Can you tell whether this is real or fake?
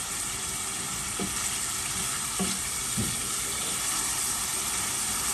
real